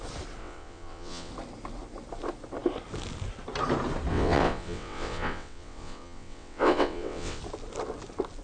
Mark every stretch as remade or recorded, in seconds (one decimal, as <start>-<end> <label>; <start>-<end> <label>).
0.0-0.4 recorded; 0.4-1.3 remade; 1.3-4.1 recorded; 4.1-7.4 remade; 7.4-8.4 recorded